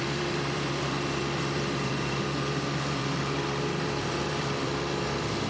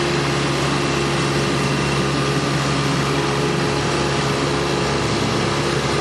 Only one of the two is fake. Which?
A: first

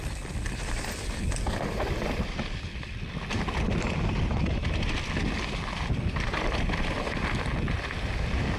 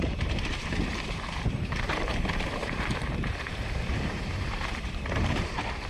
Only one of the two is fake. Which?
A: second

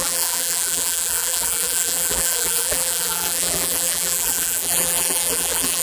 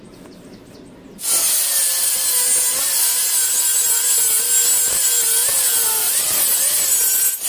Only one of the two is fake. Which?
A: first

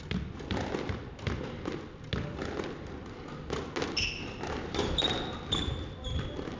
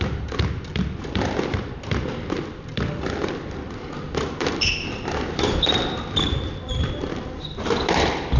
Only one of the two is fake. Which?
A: second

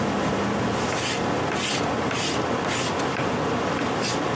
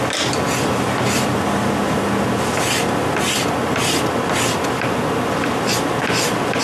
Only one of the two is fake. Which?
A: first